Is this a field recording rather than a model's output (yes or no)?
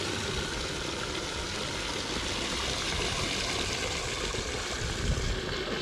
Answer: yes